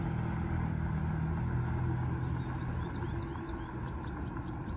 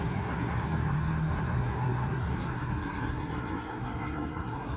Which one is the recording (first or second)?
first